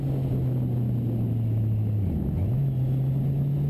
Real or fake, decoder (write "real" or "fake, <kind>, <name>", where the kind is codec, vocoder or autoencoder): real